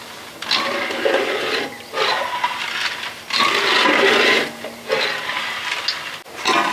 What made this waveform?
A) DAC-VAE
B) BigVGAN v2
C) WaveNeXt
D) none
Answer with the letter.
D